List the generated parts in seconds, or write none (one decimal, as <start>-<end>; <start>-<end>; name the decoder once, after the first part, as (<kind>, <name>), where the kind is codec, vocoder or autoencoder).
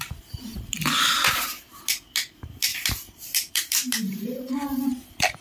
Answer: 2.7-4.5 (vocoder, BigVGAN v2)